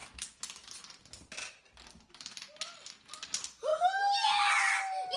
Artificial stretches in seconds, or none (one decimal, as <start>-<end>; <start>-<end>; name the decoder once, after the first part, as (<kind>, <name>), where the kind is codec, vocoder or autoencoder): none